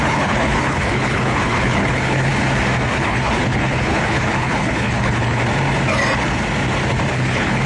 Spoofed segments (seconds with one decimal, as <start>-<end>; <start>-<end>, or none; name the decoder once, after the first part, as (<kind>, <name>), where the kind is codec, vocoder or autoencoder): 0.0-2.3 (codec, HILCodec); 2.9-5.4; 7.1-7.7

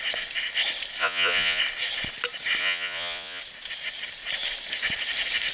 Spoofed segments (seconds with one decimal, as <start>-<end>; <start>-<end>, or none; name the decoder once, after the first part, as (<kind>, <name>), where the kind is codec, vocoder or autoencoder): 1.0-1.6 (vocoder, Vocos); 2.6-3.4

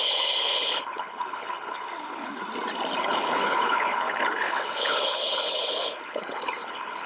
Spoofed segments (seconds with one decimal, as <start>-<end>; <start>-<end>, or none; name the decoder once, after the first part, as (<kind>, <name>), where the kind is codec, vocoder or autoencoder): 0.0-2.4 (codec, HILCodec); 3.0-7.1

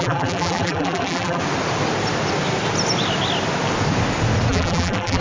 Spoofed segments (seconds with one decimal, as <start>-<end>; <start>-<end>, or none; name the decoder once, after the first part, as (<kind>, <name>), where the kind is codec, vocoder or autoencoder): 0.0-1.4 (vocoder, BigVGAN v2); 4.5-5.2

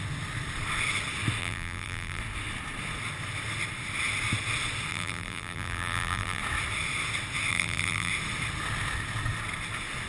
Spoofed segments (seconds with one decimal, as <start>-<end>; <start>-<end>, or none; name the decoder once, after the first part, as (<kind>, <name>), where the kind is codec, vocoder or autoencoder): 1.4-2.2 (vocoder, BigVGAN v2); 4.9-6.4; 7.5-8.1

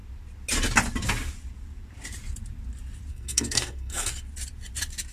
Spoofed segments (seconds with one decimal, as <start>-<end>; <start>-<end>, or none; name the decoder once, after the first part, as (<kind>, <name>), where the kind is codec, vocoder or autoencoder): 3.1-4.1 (codec, SNAC)